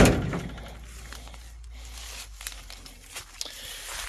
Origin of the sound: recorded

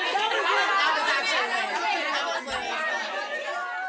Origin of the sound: recorded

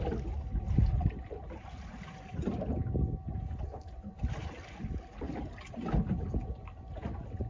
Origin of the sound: recorded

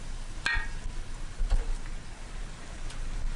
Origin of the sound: recorded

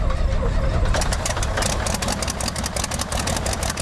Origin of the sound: recorded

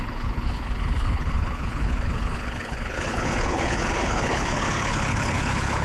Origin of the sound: remade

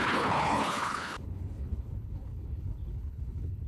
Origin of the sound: remade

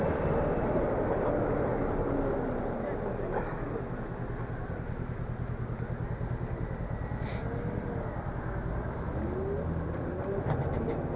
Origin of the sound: recorded